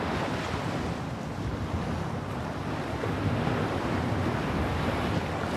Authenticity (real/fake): real